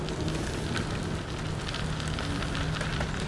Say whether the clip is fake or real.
real